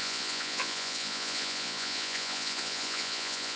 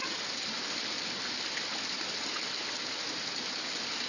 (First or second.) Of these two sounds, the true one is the second